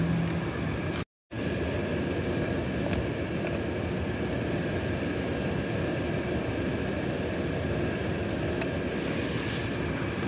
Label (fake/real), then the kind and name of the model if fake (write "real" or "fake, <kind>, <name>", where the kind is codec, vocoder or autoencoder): real